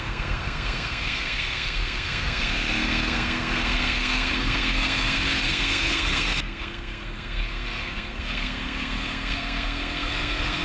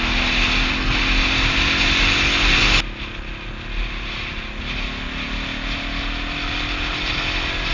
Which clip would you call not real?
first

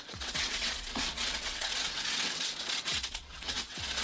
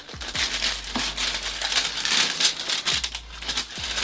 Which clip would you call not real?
first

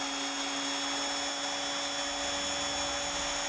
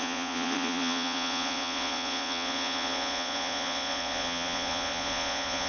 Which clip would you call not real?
second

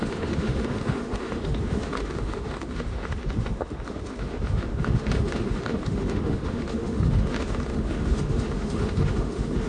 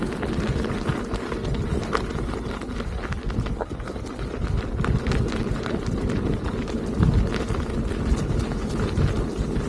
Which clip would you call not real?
first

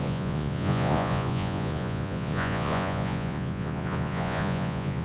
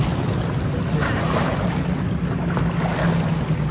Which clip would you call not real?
first